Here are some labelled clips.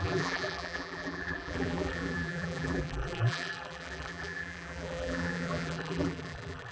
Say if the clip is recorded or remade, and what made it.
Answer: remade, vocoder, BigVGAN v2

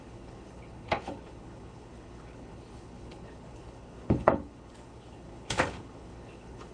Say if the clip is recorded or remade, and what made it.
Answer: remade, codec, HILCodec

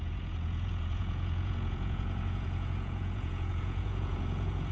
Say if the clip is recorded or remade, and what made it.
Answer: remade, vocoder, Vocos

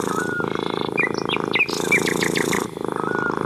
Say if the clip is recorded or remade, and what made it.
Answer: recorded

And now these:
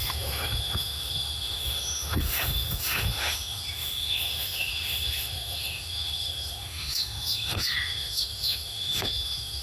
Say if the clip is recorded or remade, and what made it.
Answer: remade, autoencoder, DAC-VAE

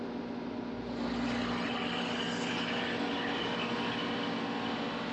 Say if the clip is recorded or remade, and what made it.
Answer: recorded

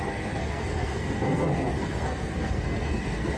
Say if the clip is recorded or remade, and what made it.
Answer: remade, codec, SNAC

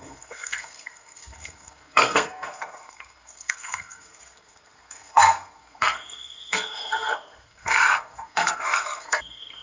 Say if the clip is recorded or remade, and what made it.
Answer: remade, codec, SNAC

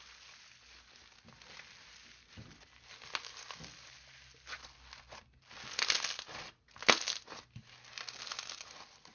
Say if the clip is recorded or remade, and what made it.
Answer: recorded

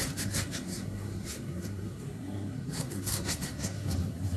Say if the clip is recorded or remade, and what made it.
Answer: remade, codec, SNAC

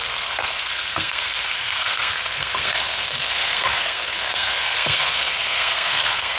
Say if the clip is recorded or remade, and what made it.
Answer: remade, codec, SNAC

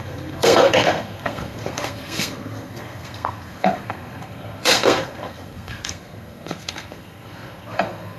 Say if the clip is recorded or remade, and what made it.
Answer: remade, codec, SNAC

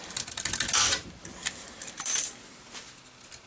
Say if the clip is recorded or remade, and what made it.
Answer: recorded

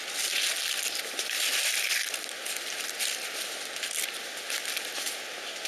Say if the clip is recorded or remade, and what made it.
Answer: recorded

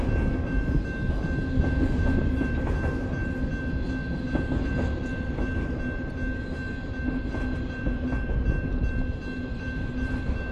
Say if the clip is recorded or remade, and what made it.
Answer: recorded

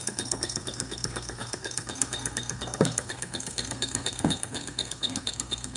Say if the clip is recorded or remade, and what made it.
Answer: remade, codec, SNAC